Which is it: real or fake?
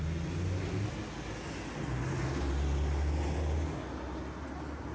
real